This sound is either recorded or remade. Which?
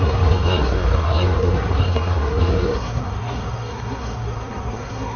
remade